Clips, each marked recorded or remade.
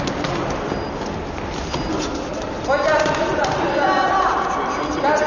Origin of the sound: recorded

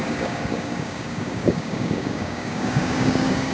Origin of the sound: remade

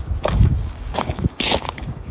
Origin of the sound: remade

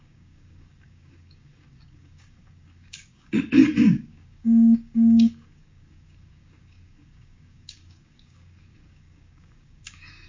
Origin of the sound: remade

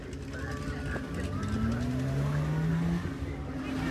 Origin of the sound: recorded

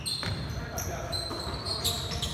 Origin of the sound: recorded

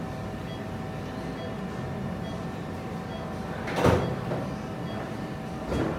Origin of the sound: recorded